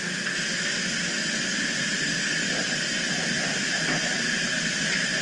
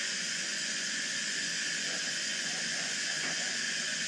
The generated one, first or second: second